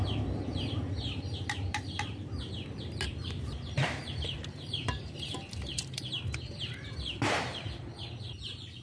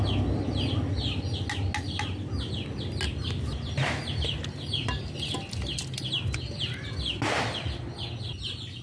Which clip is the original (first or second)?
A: second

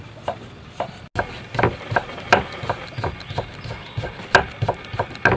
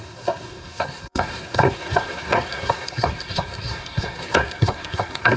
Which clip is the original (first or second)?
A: first